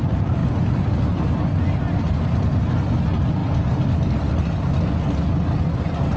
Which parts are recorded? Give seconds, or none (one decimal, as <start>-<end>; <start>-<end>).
0.0-6.2